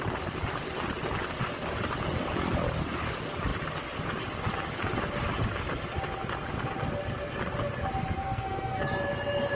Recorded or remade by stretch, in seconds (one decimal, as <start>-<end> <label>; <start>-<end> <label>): 0.0-8.2 recorded; 8.2-8.8 remade; 8.8-9.5 recorded